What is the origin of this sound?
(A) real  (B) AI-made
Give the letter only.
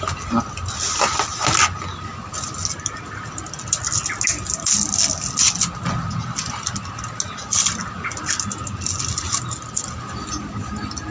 A